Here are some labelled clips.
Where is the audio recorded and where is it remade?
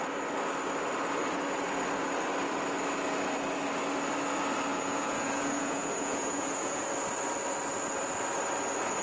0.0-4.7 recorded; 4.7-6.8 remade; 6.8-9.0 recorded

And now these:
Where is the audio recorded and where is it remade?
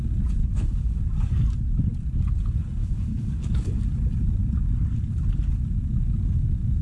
0.0-0.4 recorded; 0.4-1.0 remade; 1.0-2.8 recorded; 2.8-3.8 remade; 3.8-6.8 recorded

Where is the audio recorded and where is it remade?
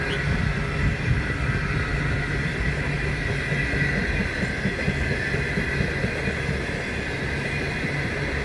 0.0-8.4 recorded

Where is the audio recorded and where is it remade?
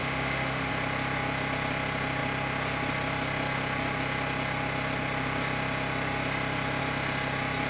0.0-0.7 remade; 0.7-7.7 recorded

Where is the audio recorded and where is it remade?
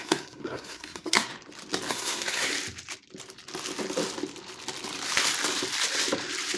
0.0-1.3 remade; 1.3-1.9 recorded; 1.9-2.5 remade; 2.5-6.6 recorded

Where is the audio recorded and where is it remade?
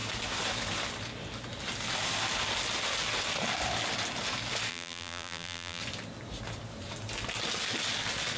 0.0-4.7 recorded; 4.7-5.8 remade; 5.8-8.4 recorded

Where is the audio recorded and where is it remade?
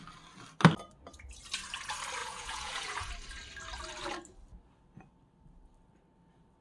0.0-2.2 recorded; 2.2-3.1 remade; 3.1-6.6 recorded